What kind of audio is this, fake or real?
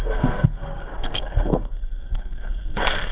fake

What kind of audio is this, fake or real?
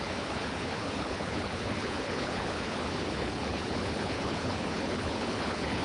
fake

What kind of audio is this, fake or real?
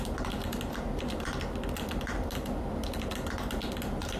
real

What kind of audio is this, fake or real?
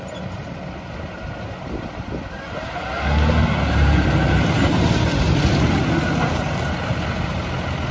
real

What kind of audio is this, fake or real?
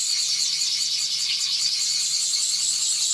real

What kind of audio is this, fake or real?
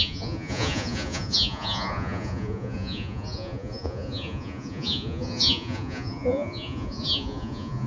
fake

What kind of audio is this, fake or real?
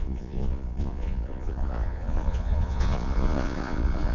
fake